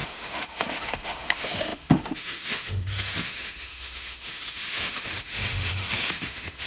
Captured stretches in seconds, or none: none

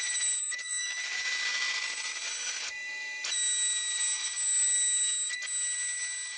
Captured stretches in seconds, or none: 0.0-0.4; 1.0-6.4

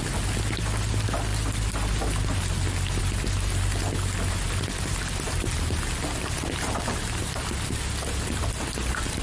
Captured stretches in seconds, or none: 0.0-9.2

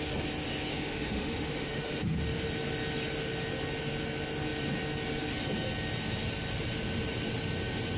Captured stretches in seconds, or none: 0.0-0.7; 2.0-8.0

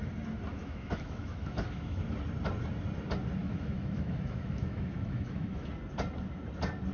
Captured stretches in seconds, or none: 0.0-0.5; 2.0-3.4; 5.7-6.9

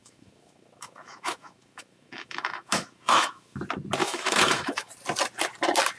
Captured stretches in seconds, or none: 3.6-4.0; 4.9-6.0

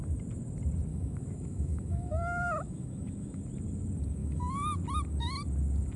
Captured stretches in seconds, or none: 0.0-0.9; 3.4-4.2; 4.8-6.0

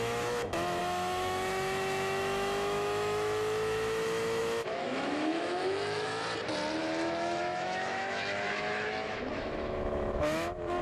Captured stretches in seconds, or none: 6.1-6.8